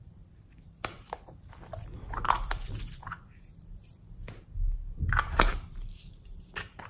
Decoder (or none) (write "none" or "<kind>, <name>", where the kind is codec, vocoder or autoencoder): vocoder, BigVGAN v2